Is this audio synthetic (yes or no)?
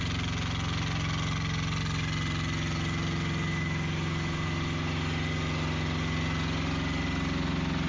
no